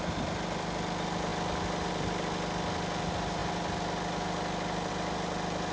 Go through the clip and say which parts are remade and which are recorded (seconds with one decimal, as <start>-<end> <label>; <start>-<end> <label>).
0.0-5.7 recorded